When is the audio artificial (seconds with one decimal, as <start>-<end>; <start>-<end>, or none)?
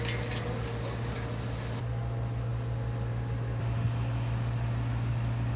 none